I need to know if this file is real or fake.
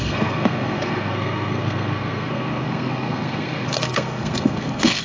fake